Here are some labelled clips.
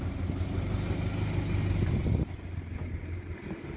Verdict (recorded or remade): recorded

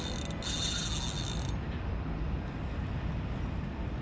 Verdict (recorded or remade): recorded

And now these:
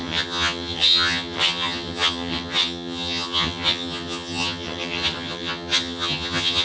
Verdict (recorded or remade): remade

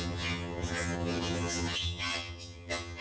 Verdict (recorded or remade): remade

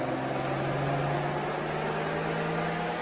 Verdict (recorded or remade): recorded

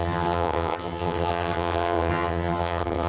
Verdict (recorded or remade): remade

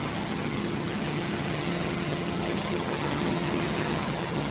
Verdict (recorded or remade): remade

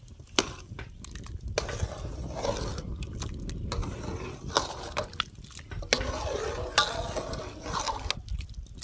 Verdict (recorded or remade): recorded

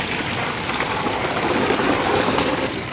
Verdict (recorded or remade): recorded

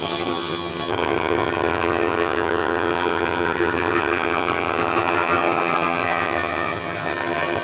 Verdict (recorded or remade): remade